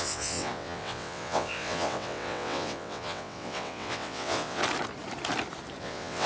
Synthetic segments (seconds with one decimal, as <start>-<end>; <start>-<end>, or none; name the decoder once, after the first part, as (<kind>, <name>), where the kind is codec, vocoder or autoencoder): 0.0-4.6 (vocoder, WaveNeXt); 5.8-6.3